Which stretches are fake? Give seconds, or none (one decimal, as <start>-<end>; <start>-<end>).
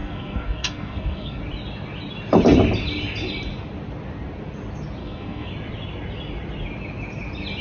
0.0-1.4; 5.0-5.5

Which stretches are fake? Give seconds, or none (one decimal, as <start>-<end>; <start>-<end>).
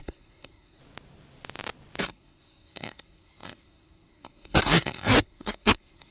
0.0-0.8; 2.0-6.1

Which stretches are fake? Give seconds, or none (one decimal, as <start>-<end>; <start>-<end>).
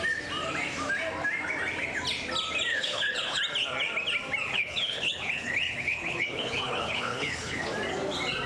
2.7-3.4; 4.5-7.7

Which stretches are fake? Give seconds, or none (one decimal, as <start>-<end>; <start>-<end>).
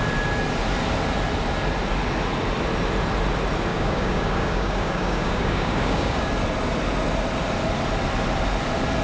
3.7-6.3